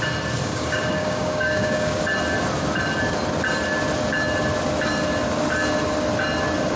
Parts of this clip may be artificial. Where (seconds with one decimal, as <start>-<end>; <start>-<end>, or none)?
0.4-2.0